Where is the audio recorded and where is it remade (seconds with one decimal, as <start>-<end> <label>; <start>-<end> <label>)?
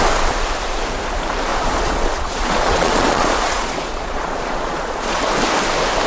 0.0-1.5 recorded; 1.5-5.2 remade; 5.2-6.1 recorded